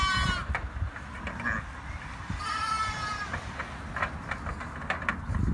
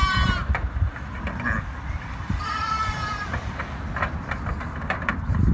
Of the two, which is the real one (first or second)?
first